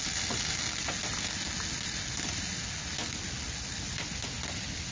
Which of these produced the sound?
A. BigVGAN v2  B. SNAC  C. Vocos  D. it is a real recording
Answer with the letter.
D